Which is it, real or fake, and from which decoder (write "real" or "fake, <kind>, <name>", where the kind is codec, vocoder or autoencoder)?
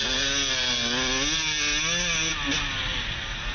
real